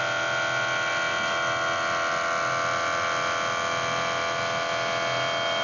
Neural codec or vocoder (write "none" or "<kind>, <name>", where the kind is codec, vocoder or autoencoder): none